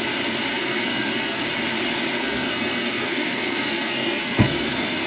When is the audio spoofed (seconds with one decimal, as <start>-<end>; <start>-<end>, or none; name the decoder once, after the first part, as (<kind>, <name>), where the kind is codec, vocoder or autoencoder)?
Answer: 0.5-1.4 (codec, SNAC); 2.1-5.1